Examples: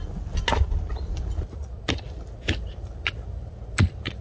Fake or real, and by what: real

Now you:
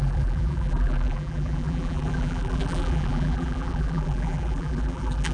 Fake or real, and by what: fake, vocoder, BigVGAN v2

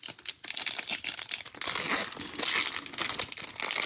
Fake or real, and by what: real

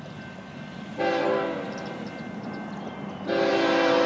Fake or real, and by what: real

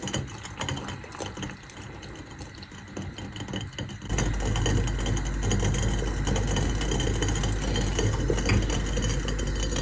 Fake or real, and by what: real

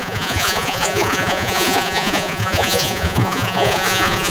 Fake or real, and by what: fake, vocoder, Vocos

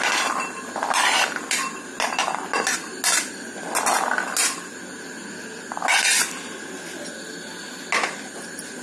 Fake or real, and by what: real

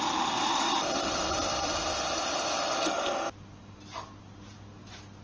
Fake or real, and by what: real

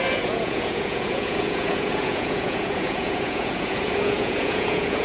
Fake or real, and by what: fake, vocoder, Vocos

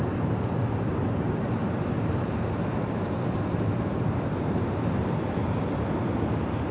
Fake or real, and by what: fake, vocoder, BigVGAN v2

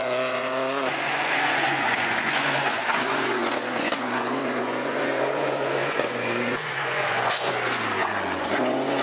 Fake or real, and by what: fake, vocoder, Vocos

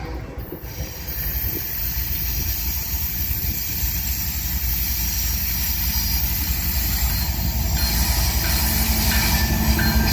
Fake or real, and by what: real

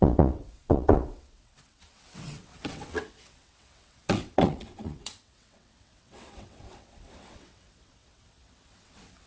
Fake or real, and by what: fake, vocoder, WaveNeXt